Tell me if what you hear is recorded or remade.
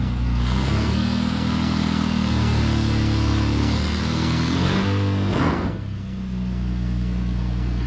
remade